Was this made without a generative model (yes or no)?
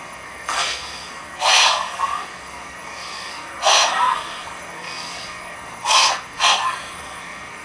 no